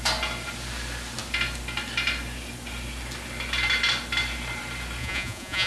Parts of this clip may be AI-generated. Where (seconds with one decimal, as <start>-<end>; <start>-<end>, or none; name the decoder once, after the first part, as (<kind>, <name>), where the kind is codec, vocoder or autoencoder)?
5.0-5.7 (vocoder, Vocos)